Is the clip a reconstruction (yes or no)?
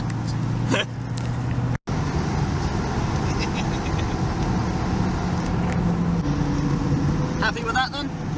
no